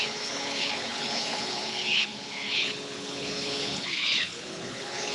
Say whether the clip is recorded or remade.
remade